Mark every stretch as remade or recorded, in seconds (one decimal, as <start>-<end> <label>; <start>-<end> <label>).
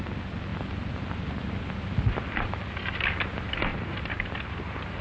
0.0-5.0 recorded